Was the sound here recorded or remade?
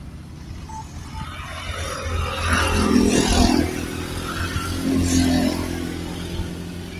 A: recorded